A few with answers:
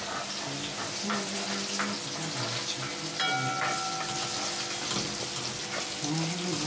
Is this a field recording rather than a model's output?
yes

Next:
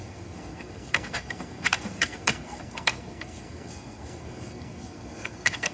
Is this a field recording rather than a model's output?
no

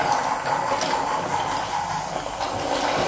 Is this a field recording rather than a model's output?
yes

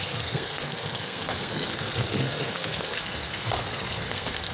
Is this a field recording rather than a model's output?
no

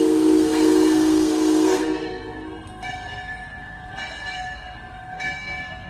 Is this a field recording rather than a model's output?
no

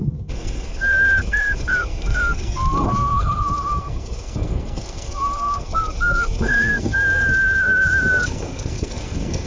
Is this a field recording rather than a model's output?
no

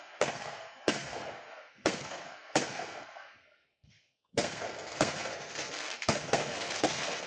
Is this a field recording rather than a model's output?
no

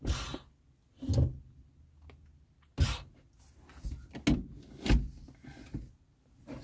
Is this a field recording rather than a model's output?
yes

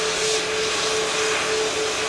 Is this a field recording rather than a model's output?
yes